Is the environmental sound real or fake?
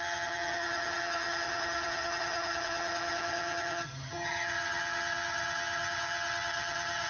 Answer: fake